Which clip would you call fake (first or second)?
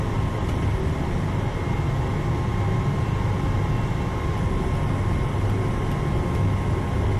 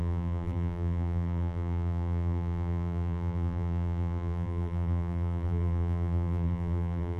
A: second